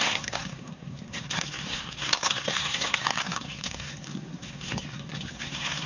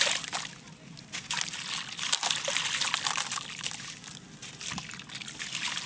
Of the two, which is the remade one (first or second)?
first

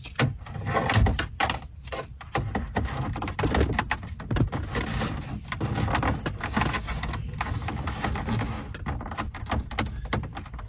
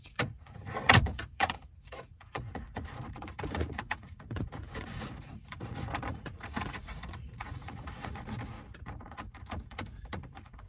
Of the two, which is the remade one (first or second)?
second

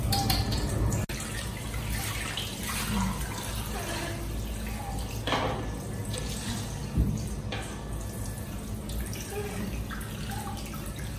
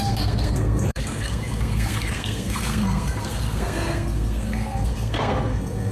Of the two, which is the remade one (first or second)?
second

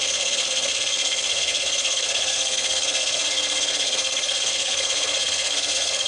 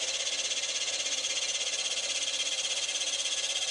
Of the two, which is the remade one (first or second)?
first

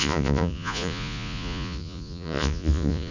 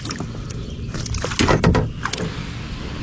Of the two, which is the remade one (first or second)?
first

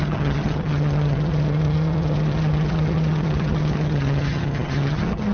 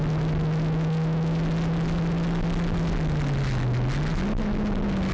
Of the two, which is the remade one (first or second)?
first